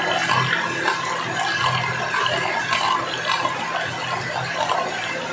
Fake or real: real